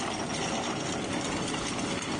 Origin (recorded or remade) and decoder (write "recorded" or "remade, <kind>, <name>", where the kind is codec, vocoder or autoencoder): recorded